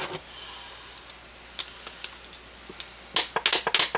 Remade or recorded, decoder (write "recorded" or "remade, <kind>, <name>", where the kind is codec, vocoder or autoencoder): recorded